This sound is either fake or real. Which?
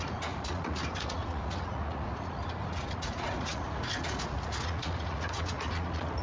fake